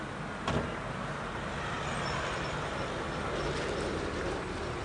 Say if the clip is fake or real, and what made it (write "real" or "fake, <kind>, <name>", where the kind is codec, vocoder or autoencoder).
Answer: real